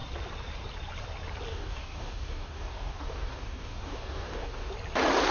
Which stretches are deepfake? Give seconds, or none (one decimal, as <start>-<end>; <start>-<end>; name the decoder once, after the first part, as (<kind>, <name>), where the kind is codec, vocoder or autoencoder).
1.5-4.7 (codec, DAC)